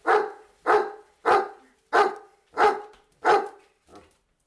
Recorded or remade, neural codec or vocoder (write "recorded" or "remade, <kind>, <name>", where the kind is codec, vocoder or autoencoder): recorded